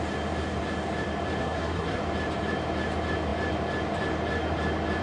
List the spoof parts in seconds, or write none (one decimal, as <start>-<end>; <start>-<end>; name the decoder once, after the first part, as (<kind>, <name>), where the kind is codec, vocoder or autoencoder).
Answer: 1.4-2.0 (codec, SNAC)